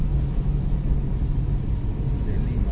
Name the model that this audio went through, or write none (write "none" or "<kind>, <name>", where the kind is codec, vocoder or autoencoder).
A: none